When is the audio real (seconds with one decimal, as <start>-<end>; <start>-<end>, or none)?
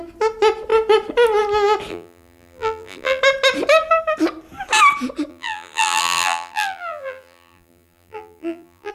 0.0-1.9; 3.2-5.3